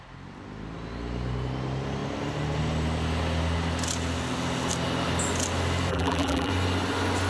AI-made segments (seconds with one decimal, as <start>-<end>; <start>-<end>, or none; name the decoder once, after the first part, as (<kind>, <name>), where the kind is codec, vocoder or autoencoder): 5.9-6.5 (vocoder, BigVGAN v2)